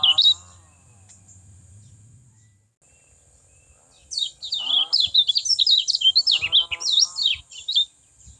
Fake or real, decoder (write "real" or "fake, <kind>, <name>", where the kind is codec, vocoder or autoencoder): real